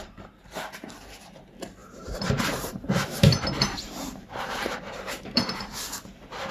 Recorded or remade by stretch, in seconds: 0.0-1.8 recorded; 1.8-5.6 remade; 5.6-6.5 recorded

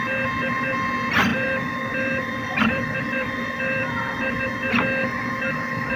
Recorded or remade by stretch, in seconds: 0.0-1.3 recorded; 1.3-4.4 remade; 4.4-6.0 recorded

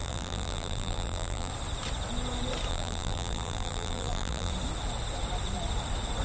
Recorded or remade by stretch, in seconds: 0.0-1.5 remade; 1.5-2.7 recorded; 2.7-4.5 remade; 4.5-6.2 recorded

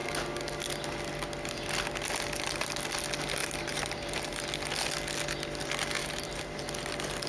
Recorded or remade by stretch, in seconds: 0.0-3.4 recorded; 3.4-4.4 remade; 4.4-6.0 recorded; 6.0-6.6 remade; 6.6-7.3 recorded

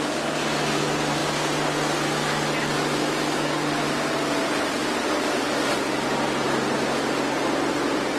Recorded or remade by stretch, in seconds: 0.0-8.2 recorded

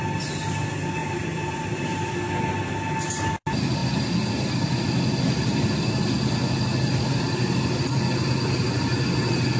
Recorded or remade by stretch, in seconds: 0.0-1.0 recorded; 1.0-2.1 remade; 2.1-9.6 recorded